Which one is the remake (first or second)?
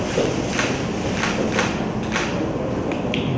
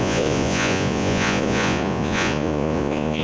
second